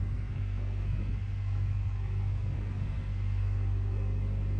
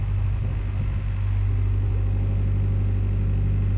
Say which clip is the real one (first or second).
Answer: second